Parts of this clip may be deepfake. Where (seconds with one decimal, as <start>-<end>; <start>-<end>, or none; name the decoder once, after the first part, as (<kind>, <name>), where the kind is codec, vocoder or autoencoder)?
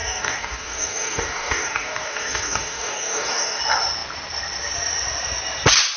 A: 0.0-3.6 (codec, DAC)